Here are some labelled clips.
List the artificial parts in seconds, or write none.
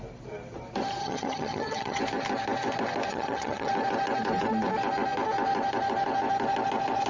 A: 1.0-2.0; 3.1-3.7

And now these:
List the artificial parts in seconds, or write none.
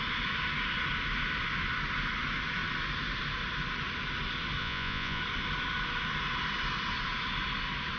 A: 4.6-5.2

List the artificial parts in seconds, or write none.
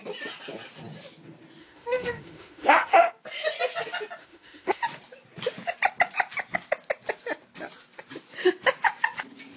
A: 1.6-3.1; 4.2-4.8